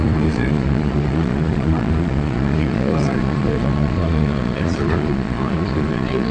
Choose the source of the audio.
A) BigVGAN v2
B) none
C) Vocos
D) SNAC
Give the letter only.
C